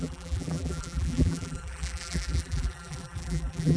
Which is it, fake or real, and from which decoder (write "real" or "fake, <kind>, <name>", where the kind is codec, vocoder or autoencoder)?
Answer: fake, vocoder, BigVGAN v2